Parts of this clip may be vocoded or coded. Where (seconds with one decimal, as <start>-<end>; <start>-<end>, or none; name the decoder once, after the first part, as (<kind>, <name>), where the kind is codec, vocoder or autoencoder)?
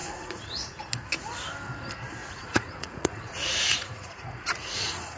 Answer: 0.0-0.8 (vocoder, Vocos); 2.2-5.2